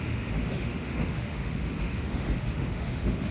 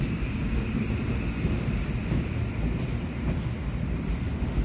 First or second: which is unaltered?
second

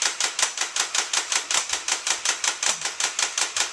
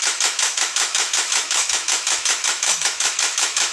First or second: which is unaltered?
first